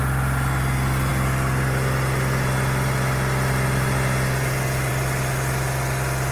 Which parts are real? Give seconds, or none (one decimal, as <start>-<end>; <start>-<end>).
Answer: 0.0-6.3